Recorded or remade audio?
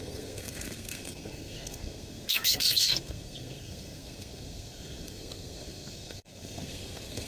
remade